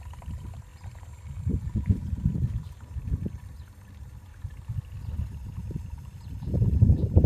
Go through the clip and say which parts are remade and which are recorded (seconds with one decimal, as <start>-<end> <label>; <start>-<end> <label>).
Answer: 0.0-7.3 recorded